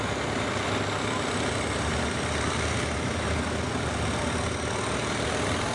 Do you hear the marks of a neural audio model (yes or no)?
no